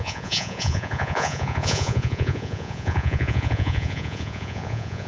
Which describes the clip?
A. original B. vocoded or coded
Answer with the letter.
B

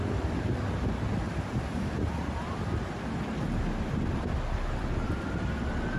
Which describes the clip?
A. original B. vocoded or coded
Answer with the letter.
B